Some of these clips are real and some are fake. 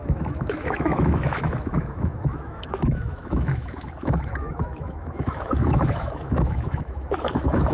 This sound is fake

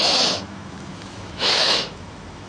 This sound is fake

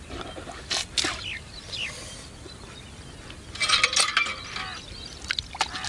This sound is real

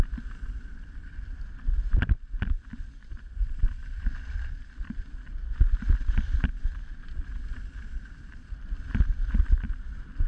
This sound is fake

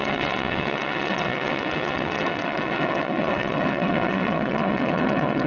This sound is fake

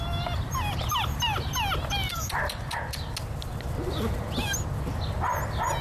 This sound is real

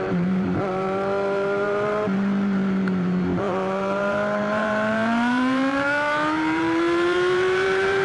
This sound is fake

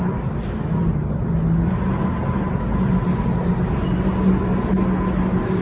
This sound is real